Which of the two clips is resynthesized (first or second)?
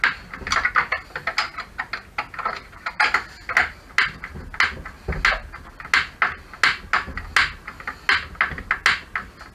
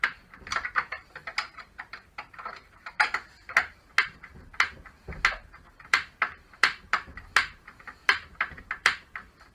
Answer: second